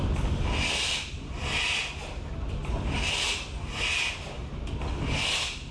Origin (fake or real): real